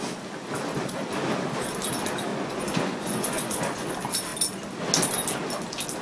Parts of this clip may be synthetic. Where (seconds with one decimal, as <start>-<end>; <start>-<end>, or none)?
2.3-3.9